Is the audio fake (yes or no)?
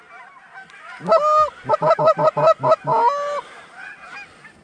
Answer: no